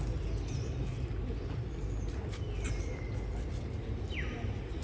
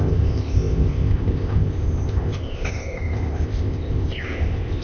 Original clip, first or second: first